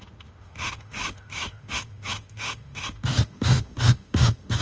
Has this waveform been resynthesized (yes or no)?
yes